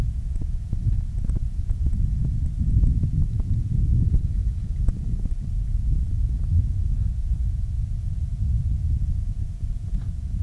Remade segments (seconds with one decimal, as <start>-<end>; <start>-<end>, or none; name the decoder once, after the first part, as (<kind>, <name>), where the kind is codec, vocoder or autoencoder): 0.0-2.2 (vocoder, Vocos); 3.4-10.4